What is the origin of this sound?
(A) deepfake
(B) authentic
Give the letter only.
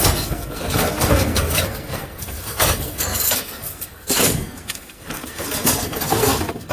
A